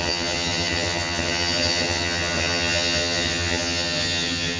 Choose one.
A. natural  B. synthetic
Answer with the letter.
B